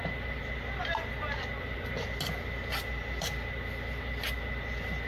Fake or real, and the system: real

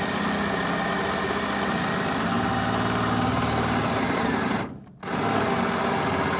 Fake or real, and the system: real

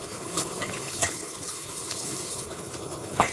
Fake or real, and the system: fake, codec, HILCodec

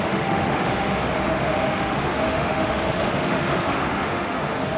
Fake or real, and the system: fake, autoencoder, DAC-VAE